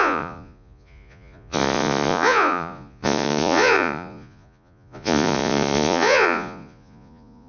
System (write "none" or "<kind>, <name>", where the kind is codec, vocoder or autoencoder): vocoder, Vocos